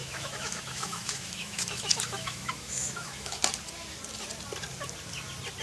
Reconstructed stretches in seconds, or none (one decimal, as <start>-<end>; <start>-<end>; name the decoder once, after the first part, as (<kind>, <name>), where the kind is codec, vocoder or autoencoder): 0.0-3.4 (autoencoder, DAC-VAE)